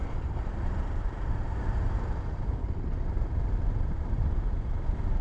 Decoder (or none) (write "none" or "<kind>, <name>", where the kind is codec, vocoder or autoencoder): vocoder, BigVGAN v2